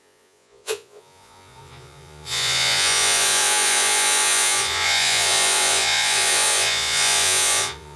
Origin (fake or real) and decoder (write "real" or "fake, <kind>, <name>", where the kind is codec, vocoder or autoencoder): fake, vocoder, Vocos